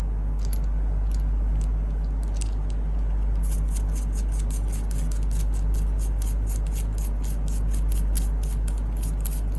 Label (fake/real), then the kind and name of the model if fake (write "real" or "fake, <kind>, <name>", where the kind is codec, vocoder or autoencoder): real